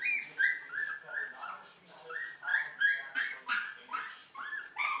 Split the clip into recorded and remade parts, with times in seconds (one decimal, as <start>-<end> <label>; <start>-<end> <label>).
0.0-2.5 recorded; 2.5-3.4 remade; 3.4-4.2 recorded; 4.2-5.0 remade